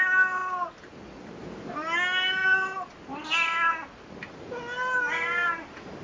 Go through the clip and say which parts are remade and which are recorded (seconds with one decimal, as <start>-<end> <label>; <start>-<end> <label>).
0.0-6.0 recorded